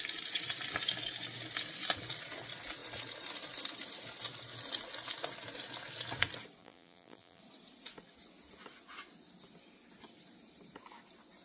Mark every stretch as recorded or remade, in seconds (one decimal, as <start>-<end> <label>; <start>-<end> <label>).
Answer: 0.0-6.6 recorded; 6.6-7.4 remade; 7.4-11.4 recorded

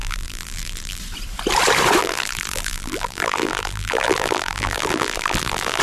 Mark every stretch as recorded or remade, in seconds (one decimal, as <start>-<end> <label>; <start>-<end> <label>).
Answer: 0.0-1.0 remade; 1.0-2.0 recorded; 2.0-5.8 remade